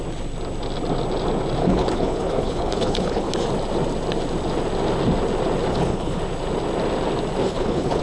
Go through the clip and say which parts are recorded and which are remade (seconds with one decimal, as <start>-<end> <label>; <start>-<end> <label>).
0.0-1.6 recorded; 1.6-3.3 remade; 3.3-5.7 recorded; 5.7-6.2 remade; 6.2-7.4 recorded; 7.4-8.0 remade